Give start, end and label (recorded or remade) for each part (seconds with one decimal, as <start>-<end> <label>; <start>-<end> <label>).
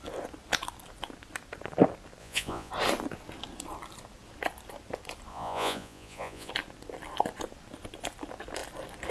0.0-2.2 recorded; 2.2-2.7 remade; 2.7-5.3 recorded; 5.3-6.5 remade; 6.5-9.1 recorded